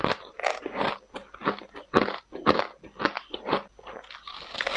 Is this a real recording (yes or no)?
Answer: yes